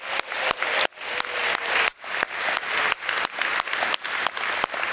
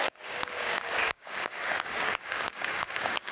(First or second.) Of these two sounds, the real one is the first